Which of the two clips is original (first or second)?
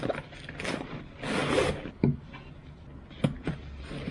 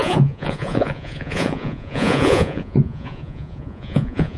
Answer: first